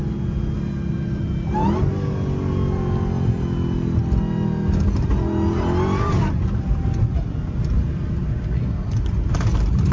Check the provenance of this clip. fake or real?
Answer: real